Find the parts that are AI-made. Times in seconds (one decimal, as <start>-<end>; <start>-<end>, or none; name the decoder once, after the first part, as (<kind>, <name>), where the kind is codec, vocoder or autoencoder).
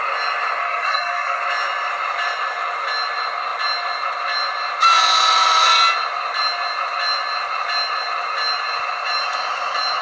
0.6-1.4 (codec, SNAC)